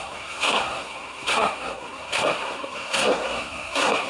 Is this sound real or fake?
fake